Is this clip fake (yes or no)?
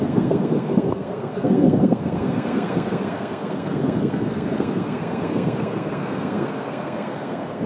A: yes